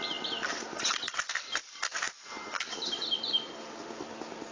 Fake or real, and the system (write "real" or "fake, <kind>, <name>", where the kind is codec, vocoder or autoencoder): real